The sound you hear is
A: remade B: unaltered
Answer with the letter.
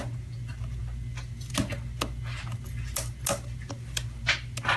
B